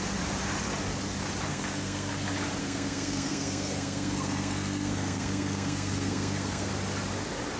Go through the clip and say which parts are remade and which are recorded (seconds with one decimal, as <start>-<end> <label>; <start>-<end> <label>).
0.0-1.5 recorded; 1.5-2.1 remade; 2.1-2.6 recorded; 2.6-6.7 remade; 6.7-7.6 recorded

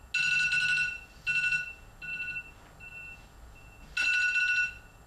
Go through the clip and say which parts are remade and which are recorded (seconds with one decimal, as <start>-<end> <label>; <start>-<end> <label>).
0.0-5.1 recorded

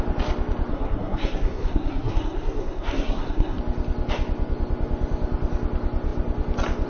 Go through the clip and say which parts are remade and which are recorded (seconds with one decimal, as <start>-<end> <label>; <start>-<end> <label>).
0.0-0.7 recorded; 0.7-3.6 remade; 3.6-6.9 recorded

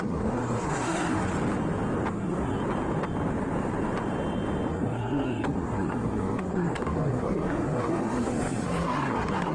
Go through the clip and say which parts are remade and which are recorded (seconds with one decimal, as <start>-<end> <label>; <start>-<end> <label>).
0.0-1.3 remade; 1.3-2.1 recorded; 2.1-2.6 remade; 2.6-4.7 recorded; 4.7-9.5 remade

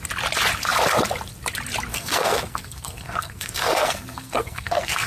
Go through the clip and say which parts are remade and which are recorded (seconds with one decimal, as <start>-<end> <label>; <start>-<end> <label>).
0.0-1.9 recorded; 1.9-5.1 remade